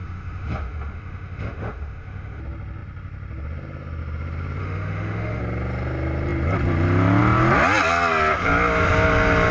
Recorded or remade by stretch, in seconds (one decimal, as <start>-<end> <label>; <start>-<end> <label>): 0.0-2.4 remade; 2.4-4.6 recorded; 4.6-5.4 remade; 5.4-9.5 recorded

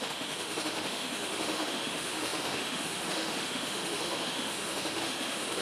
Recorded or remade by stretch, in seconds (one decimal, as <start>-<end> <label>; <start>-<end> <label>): 0.0-5.6 remade

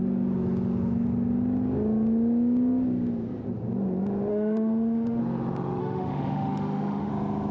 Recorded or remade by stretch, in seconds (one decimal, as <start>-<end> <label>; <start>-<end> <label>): 0.0-4.3 recorded; 4.3-5.2 remade; 5.2-5.8 recorded; 5.8-7.1 remade; 7.1-7.5 recorded

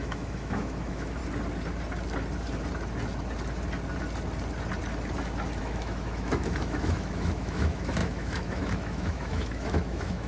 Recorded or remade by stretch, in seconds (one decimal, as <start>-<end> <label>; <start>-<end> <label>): 0.0-1.2 remade; 1.2-5.6 recorded; 5.6-10.3 remade